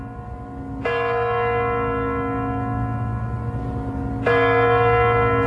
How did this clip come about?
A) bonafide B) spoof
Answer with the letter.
A